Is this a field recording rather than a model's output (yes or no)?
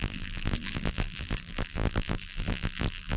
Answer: no